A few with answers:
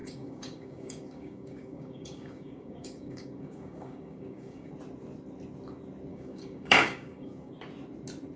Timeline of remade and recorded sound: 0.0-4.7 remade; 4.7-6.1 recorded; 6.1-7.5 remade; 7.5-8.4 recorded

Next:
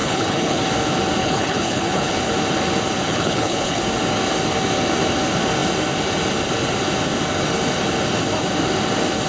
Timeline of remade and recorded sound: 0.0-0.6 remade; 0.6-1.2 recorded; 1.2-2.2 remade; 2.2-3.1 recorded; 3.1-3.8 remade; 3.8-9.3 recorded

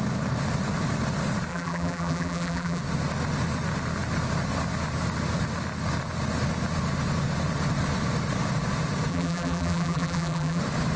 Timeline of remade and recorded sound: 0.0-1.5 recorded; 1.5-2.8 remade; 2.8-9.1 recorded; 9.1-10.6 remade; 10.6-11.0 recorded

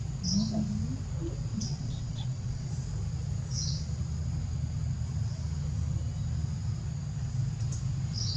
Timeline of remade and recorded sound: 0.0-1.5 recorded; 1.5-2.7 remade; 2.7-8.4 recorded